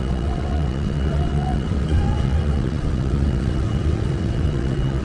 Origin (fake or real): fake